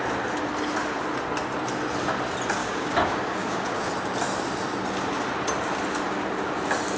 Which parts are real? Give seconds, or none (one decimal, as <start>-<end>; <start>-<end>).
0.0-2.6; 3.9-7.0